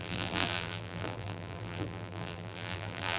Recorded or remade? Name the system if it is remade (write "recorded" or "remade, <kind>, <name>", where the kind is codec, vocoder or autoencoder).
remade, vocoder, BigVGAN v2